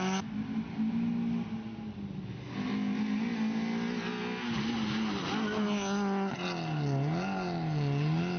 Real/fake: real